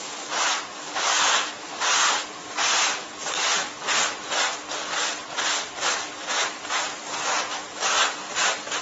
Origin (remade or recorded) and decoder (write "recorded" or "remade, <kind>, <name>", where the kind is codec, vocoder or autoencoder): recorded